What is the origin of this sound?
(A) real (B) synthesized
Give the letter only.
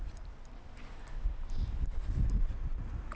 A